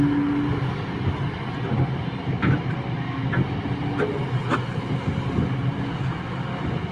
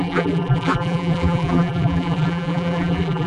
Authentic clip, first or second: first